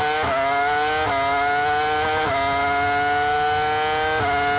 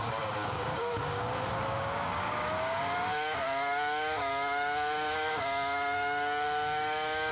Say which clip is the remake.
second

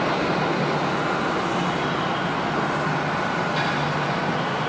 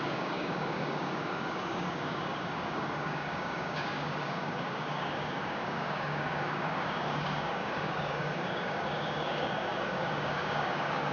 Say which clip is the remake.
second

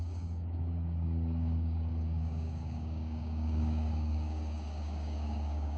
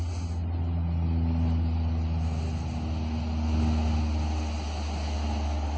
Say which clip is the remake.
first